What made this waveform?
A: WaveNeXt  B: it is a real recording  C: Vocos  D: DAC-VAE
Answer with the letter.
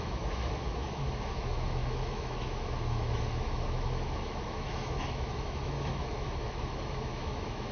D